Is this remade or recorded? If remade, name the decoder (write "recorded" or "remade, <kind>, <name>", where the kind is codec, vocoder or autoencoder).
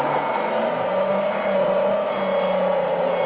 recorded